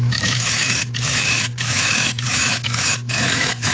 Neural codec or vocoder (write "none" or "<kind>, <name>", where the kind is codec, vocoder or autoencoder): autoencoder, DAC-VAE